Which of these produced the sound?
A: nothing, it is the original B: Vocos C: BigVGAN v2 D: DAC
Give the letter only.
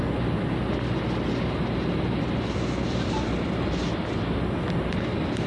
A